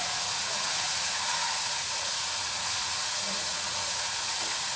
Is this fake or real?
fake